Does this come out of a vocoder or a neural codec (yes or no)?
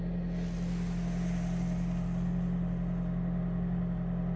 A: no